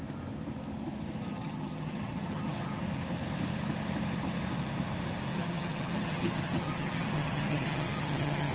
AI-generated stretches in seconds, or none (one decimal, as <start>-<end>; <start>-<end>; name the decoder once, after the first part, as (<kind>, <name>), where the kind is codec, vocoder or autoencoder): 1.3-2.8 (vocoder, HiFi-GAN); 5.3-8.5